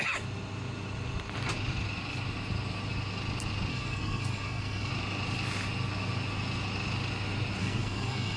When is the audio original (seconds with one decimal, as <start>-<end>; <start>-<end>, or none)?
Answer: 0.0-3.7; 4.9-7.6